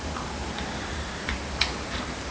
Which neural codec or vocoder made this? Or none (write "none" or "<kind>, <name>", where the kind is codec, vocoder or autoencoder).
vocoder, BigVGAN v2